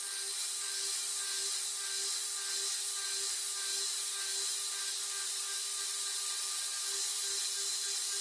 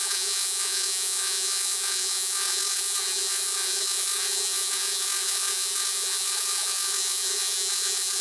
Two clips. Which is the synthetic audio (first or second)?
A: second